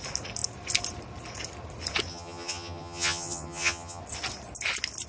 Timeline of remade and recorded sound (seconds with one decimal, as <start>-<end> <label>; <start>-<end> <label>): 0.0-2.1 recorded; 2.1-4.0 remade; 4.0-5.1 recorded

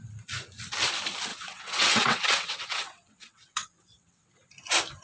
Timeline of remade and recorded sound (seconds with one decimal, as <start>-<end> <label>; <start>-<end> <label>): 0.0-1.3 recorded; 1.3-4.3 remade; 4.3-5.0 recorded

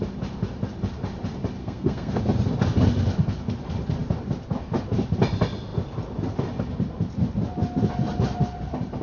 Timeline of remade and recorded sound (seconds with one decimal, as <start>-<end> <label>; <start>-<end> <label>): 0.0-1.6 recorded; 1.6-2.2 remade; 2.2-9.0 recorded

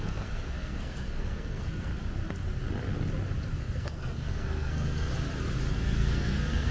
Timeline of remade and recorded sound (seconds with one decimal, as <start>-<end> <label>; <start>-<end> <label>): 0.0-1.9 remade; 1.9-3.5 recorded; 3.5-5.1 remade; 5.1-5.7 recorded; 5.7-6.7 remade

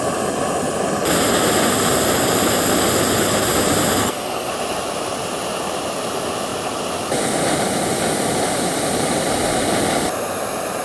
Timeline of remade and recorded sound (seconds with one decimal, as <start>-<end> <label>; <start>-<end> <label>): 0.0-4.0 recorded; 4.0-4.5 remade; 4.5-10.8 recorded

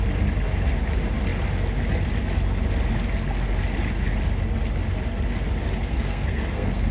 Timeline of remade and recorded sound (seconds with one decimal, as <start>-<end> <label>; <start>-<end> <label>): 0.0-5.9 recorded; 5.9-6.9 remade